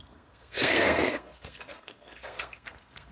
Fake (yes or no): yes